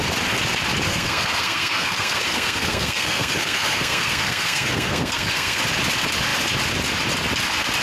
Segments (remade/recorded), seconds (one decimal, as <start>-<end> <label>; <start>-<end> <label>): 0.0-0.9 recorded; 0.9-5.6 remade; 5.6-7.8 recorded